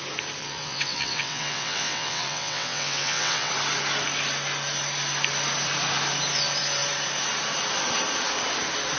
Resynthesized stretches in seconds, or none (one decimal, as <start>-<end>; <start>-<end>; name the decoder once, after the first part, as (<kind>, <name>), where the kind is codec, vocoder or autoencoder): 0.4-3.5 (vocoder, WaveNeXt)